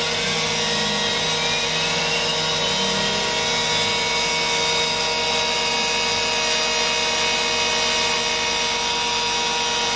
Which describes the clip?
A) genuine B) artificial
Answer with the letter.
A